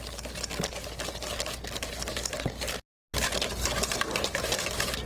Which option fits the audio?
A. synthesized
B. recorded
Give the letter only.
B